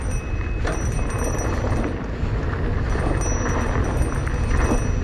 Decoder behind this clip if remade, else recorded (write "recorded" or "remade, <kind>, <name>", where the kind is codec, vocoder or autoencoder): recorded